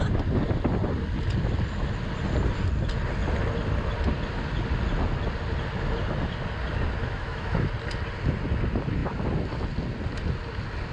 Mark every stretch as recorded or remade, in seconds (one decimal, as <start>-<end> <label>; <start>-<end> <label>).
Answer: 0.0-7.0 recorded; 7.0-7.7 remade; 7.7-10.9 recorded